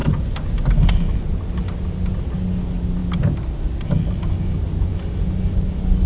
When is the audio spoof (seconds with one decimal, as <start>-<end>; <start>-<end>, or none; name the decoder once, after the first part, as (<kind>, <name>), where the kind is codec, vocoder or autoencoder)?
none